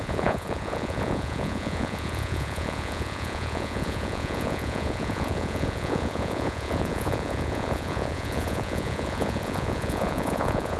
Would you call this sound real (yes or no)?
no